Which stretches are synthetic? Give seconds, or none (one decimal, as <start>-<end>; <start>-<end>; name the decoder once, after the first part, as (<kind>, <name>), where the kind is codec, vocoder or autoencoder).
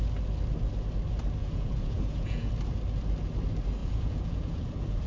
1.4-2.5 (vocoder, Vocos); 3.8-5.1